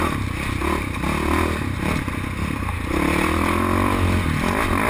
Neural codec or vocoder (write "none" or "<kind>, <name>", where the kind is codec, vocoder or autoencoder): none